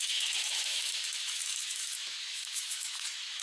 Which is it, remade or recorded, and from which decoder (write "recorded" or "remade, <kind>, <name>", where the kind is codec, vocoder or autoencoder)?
remade, autoencoder, DAC-VAE